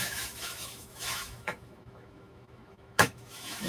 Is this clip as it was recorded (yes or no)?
no